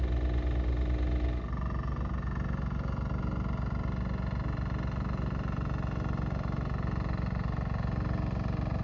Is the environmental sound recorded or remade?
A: recorded